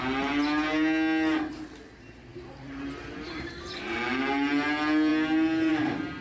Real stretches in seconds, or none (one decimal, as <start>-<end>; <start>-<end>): 0.0-2.3; 4.0-6.2